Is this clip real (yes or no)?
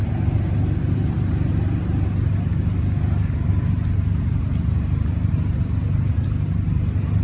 yes